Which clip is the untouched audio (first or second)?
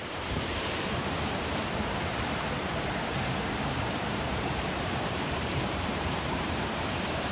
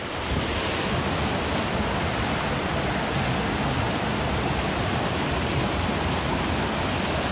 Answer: second